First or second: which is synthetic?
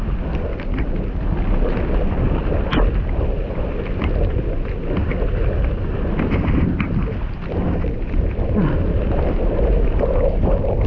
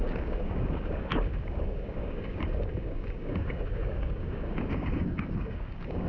second